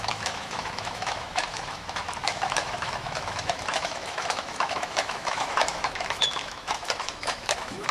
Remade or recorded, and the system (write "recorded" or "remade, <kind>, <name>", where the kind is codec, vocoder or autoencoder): remade, autoencoder, DAC-VAE